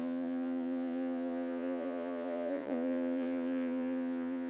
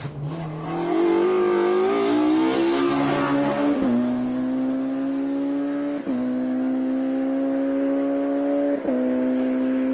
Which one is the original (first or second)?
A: second